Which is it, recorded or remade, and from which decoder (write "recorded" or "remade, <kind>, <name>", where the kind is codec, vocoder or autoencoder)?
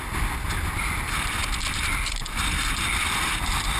recorded